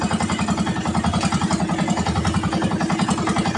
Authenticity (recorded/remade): recorded